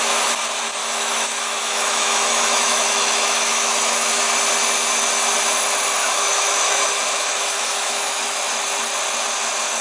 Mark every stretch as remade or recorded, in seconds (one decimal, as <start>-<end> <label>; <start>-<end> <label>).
0.0-0.8 recorded; 0.8-4.2 remade; 4.2-6.0 recorded; 6.0-8.2 remade; 8.2-9.8 recorded